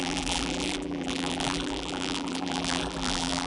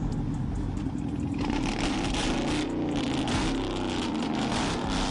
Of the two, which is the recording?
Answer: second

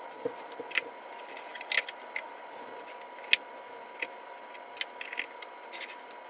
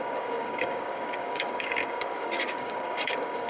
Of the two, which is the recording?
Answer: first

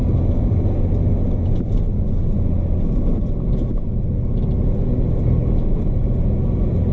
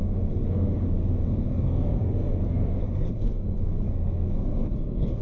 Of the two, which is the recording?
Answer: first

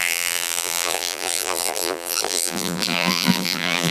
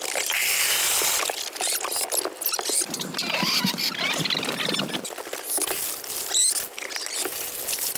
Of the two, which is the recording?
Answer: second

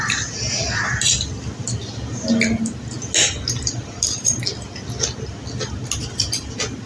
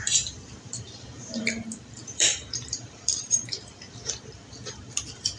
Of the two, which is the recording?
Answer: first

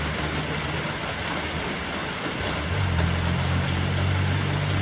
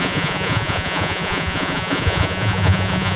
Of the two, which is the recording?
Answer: first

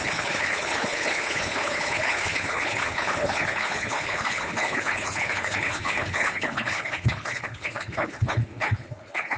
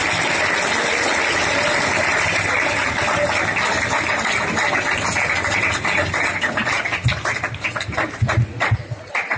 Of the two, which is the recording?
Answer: second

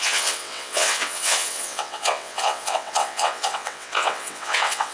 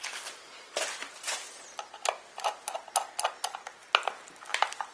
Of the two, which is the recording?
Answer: second